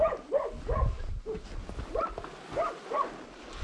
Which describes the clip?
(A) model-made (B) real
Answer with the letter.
B